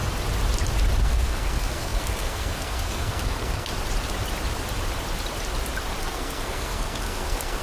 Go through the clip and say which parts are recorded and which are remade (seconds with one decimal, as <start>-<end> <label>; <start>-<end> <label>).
0.0-1.0 recorded; 1.0-3.7 remade; 3.7-6.0 recorded; 6.0-7.6 remade